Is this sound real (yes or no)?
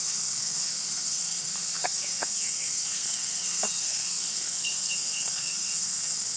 no